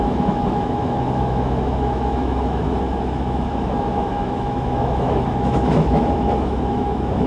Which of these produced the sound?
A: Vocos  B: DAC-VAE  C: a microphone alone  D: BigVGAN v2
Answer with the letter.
B